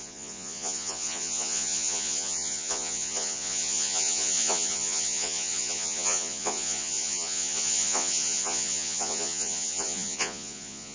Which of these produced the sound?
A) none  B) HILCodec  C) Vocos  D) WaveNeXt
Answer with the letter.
C